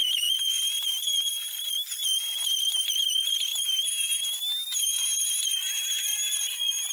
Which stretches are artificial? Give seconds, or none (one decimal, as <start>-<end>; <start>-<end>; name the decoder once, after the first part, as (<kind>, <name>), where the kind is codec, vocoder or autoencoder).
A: 0.0-0.6 (vocoder, Vocos)

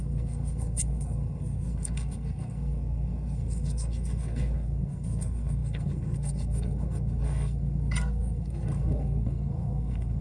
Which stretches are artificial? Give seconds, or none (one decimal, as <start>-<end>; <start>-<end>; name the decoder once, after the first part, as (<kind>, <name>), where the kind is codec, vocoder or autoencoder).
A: 0.0-10.2 (codec, SNAC)

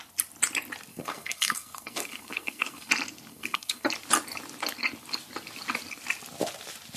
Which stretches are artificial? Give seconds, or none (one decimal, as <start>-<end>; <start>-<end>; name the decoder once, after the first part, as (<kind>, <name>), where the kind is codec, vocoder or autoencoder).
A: 0.9-2.9 (codec, SNAC); 3.3-3.9

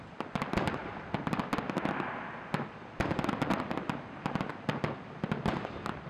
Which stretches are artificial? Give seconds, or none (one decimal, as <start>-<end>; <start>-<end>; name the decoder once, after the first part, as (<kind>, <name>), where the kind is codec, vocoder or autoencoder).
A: none

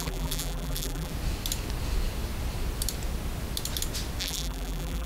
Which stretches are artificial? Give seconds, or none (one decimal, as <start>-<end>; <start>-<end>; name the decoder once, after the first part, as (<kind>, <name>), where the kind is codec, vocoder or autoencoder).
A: 0.0-1.1 (vocoder, BigVGAN v2); 4.2-5.1

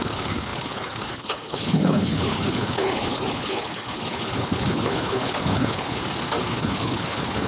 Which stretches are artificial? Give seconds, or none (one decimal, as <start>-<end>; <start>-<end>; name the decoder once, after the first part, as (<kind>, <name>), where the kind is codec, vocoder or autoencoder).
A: 0.0-6.0 (codec, HILCodec); 6.5-7.5

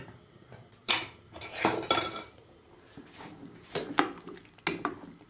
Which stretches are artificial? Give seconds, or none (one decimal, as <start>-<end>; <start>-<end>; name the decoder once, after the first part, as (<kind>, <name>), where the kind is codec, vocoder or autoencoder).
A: 0.8-4.0 (vocoder, BigVGAN v2)

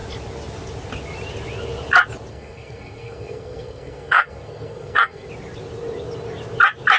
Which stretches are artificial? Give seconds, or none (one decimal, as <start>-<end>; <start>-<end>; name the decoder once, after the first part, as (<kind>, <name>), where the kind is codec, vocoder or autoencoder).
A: 2.3-5.3 (codec, SNAC)